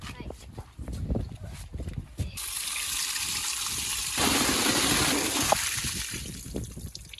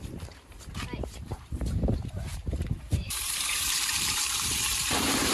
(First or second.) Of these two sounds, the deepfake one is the second